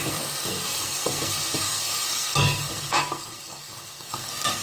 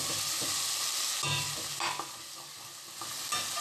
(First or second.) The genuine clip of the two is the second